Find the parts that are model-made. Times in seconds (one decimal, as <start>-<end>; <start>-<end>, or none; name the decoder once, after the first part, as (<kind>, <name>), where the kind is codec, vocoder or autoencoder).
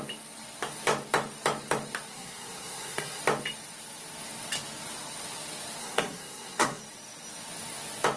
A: 2.1-3.2 (codec, SNAC); 5.8-6.8